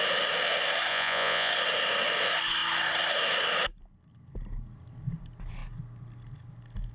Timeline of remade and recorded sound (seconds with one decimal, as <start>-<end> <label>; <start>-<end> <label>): 0.0-0.9 recorded; 0.9-1.5 remade; 1.5-6.9 recorded